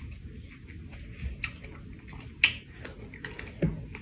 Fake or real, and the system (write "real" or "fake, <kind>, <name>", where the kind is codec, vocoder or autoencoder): real